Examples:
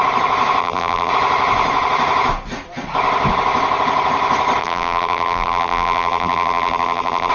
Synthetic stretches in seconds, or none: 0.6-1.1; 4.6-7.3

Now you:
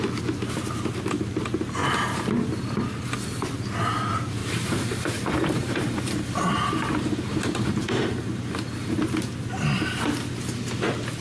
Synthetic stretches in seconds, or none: 4.4-8.9

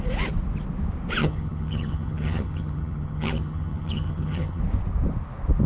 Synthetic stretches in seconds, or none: 1.2-4.6

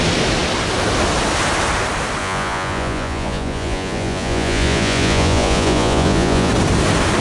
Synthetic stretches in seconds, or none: 2.2-6.5